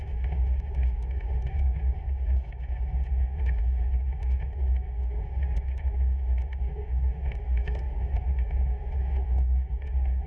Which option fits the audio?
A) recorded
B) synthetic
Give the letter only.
B